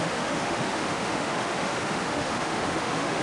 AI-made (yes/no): yes